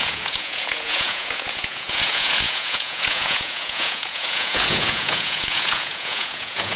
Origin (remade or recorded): remade